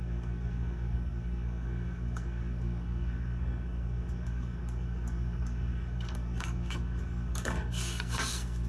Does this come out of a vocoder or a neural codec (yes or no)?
yes